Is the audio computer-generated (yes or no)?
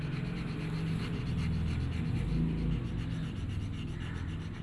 no